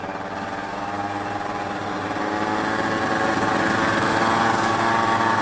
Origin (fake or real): real